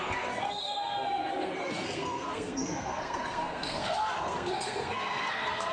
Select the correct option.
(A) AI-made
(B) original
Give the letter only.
A